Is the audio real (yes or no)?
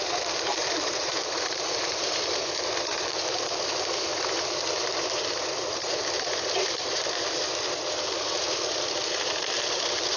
no